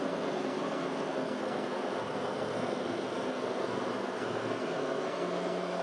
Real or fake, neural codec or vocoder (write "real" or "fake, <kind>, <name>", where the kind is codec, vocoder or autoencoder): fake, codec, SNAC